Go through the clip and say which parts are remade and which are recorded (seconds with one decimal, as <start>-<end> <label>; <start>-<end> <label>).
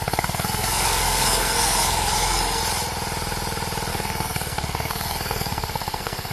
0.0-2.6 remade; 2.6-3.9 recorded; 3.9-6.3 remade